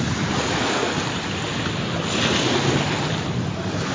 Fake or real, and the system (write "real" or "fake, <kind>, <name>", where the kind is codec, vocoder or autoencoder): real